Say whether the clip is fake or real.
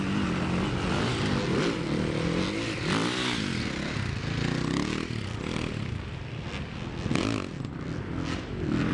real